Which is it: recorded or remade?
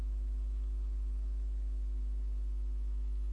recorded